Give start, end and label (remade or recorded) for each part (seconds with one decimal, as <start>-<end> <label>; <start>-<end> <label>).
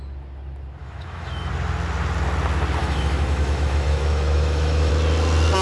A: 0.0-0.8 recorded; 0.8-1.5 remade; 1.5-2.8 recorded; 2.8-4.9 remade; 4.9-5.6 recorded